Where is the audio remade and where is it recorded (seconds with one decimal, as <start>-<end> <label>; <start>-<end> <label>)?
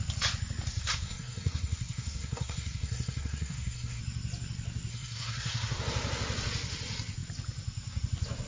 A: 0.0-0.7 recorded; 0.7-4.0 remade; 4.0-4.9 recorded; 4.9-5.8 remade; 5.8-8.5 recorded